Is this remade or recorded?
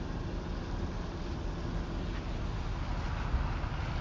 recorded